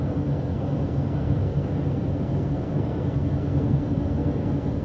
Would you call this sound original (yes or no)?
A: no